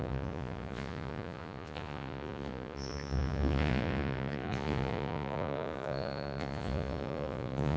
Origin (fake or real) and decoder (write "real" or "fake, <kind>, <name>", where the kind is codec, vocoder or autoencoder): fake, vocoder, Vocos